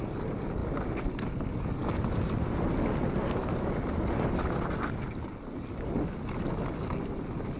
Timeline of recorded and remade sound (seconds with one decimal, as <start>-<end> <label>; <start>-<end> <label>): 0.0-7.6 recorded